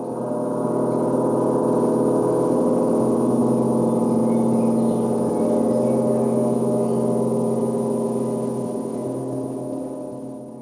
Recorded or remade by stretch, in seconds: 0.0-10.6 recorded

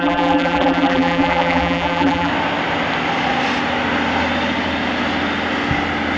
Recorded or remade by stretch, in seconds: 0.0-2.3 remade; 2.3-6.2 recorded